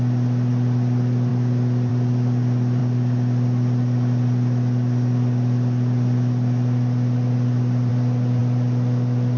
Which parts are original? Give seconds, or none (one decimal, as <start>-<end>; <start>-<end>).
0.0-9.4